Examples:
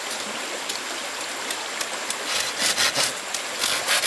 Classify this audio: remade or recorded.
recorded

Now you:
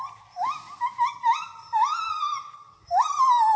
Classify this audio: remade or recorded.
recorded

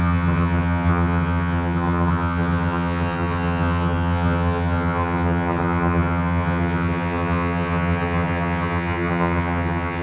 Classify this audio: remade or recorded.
remade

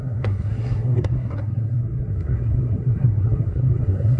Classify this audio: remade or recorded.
remade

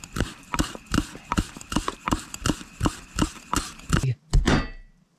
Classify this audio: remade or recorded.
recorded